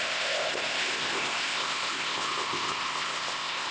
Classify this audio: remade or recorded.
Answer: remade